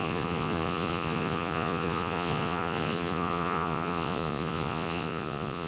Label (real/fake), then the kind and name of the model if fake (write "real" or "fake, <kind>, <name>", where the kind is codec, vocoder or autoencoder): fake, vocoder, Vocos